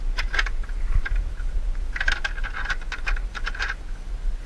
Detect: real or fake real